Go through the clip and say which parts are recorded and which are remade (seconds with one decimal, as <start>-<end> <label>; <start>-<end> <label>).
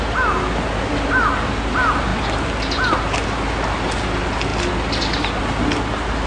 0.0-6.3 recorded